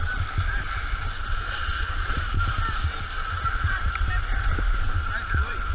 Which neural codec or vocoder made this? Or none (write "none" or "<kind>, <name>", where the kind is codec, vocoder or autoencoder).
none